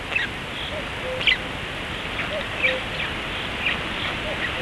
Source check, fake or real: real